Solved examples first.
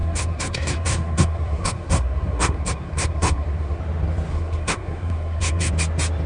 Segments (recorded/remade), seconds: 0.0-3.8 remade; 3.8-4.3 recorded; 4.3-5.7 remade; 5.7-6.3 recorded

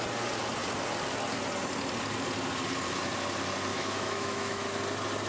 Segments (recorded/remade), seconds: 0.0-3.7 recorded; 3.7-4.8 remade; 4.8-5.3 recorded

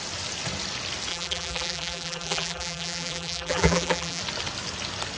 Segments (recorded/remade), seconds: 0.0-1.1 recorded; 1.1-4.2 remade; 4.2-5.2 recorded

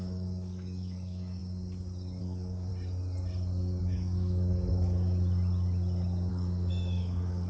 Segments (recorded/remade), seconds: 0.0-1.4 remade; 1.4-2.2 recorded; 2.2-2.7 remade; 2.7-3.8 recorded; 3.8-4.7 remade; 4.7-6.3 recorded; 6.3-7.5 remade

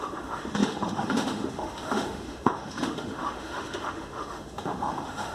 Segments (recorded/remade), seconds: 0.0-5.3 remade